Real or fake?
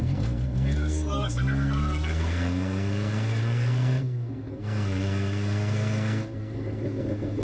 fake